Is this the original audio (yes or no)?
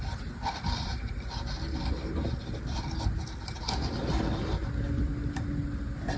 yes